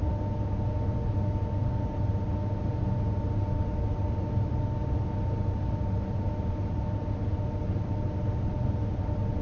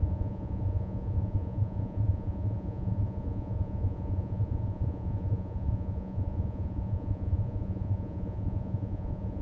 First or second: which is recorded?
first